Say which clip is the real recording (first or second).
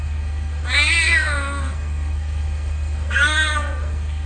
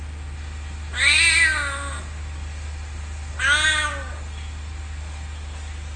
second